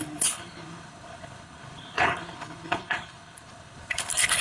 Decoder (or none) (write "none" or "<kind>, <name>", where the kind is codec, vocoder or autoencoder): codec, HILCodec